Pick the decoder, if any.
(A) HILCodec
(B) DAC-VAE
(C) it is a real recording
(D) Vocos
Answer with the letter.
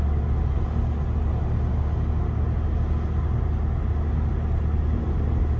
C